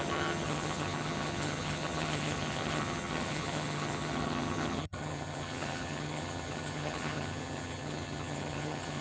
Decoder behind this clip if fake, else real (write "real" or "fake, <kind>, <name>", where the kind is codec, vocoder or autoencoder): fake, vocoder, HiFi-GAN